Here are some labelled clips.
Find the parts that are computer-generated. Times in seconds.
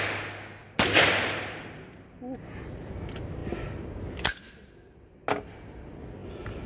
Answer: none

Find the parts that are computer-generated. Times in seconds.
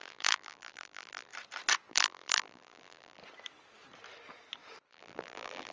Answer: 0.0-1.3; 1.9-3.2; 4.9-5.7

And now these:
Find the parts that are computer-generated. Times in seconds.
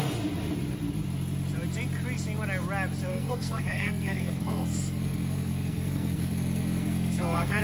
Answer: 3.1-7.6